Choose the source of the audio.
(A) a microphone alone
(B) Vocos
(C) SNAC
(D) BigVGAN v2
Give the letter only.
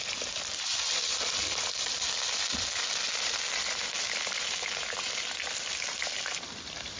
D